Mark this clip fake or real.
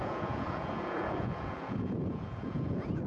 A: fake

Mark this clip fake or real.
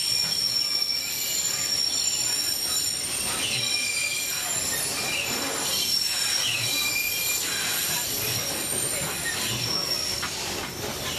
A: real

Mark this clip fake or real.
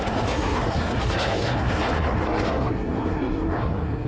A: fake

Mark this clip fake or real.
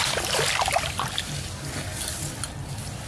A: real